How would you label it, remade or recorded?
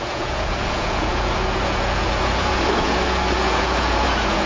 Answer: remade